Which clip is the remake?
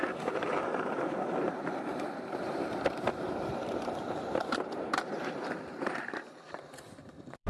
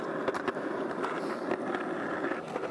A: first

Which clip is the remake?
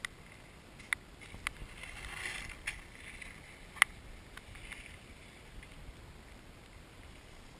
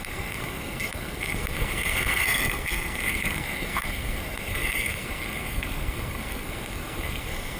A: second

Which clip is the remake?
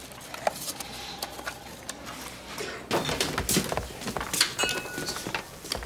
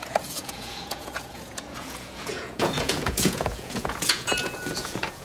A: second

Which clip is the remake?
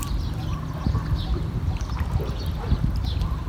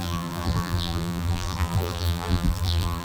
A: second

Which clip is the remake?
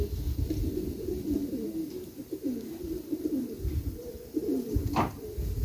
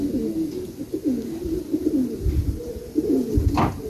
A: first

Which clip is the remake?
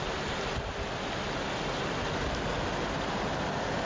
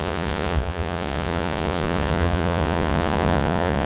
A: second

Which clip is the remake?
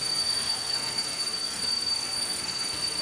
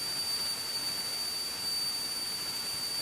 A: first